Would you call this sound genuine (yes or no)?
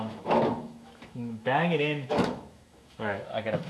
no